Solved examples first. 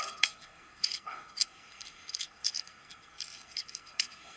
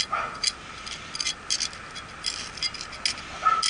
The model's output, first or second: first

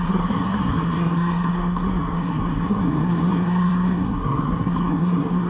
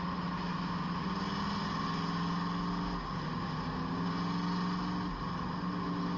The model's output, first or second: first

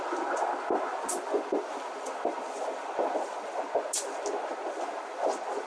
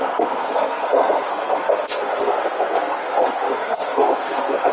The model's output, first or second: second